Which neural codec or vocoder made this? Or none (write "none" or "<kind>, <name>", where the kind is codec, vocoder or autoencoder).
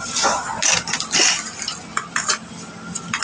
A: none